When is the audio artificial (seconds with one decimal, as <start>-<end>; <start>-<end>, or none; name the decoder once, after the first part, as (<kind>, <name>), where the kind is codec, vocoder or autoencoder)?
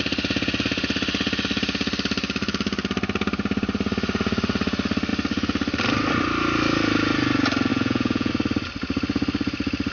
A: 7.7-8.3 (vocoder, Vocos)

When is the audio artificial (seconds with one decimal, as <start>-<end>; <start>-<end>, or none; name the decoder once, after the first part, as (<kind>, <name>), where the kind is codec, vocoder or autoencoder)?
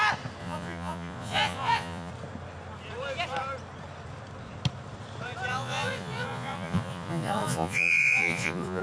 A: 0.4-2.1 (vocoder, Vocos); 5.5-8.8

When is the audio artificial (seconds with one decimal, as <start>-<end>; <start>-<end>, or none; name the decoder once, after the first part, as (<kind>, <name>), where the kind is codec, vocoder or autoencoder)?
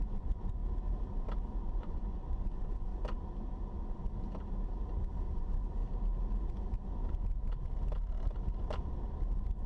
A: 0.0-0.6 (vocoder, Vocos); 1.6-2.9; 5.3-5.8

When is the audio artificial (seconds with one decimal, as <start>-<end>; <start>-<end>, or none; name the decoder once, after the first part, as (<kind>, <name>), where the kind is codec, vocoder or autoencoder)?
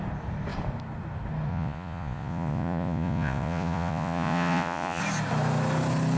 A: 1.5-5.0 (vocoder, Vocos)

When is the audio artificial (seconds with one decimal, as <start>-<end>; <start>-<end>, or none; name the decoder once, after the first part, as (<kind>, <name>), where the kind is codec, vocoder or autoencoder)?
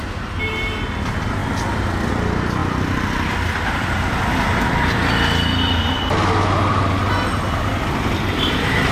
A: none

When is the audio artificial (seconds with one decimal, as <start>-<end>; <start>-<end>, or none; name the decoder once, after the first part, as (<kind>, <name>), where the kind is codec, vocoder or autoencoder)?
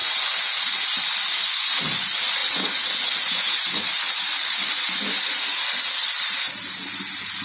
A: 2.4-6.1 (vocoder, Vocos)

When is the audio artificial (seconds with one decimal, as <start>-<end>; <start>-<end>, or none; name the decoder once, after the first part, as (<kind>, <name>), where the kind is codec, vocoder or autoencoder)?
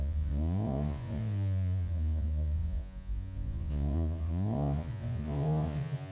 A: 0.0-6.1 (vocoder, Vocos)